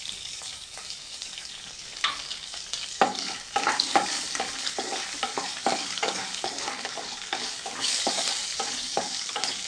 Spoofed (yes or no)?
yes